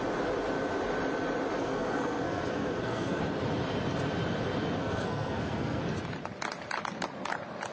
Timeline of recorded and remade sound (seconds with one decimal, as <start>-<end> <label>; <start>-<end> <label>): 0.0-1.6 recorded; 1.6-3.2 remade; 3.2-4.8 recorded; 4.8-5.8 remade; 5.8-7.7 recorded